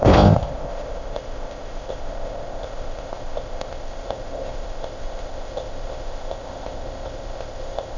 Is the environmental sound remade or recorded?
remade